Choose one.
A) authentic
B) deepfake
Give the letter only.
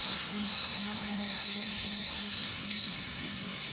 B